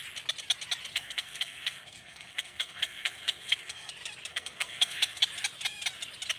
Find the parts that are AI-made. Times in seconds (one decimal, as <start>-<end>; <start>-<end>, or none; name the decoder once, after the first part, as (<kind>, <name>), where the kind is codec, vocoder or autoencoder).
0.9-3.9 (codec, SNAC); 4.3-5.2